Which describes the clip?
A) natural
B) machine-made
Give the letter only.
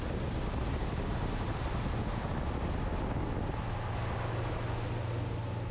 A